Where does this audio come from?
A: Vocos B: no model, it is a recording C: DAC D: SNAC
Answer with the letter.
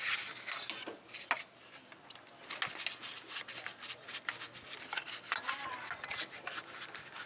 B